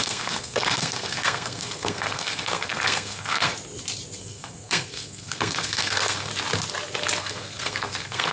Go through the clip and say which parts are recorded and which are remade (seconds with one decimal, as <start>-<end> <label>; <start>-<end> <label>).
0.0-3.5 remade; 3.5-4.2 recorded; 4.2-6.3 remade; 6.3-7.2 recorded; 7.2-8.3 remade